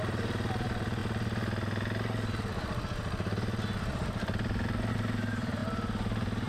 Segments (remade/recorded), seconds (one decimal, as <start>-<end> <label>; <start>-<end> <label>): 0.0-1.0 remade; 1.0-4.9 recorded; 4.9-6.5 remade